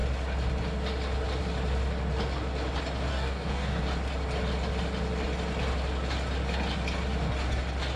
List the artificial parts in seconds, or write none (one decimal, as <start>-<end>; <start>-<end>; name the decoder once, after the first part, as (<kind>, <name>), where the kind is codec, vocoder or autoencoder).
3.1-3.8 (codec, DAC)